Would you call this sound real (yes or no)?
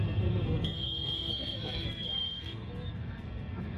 no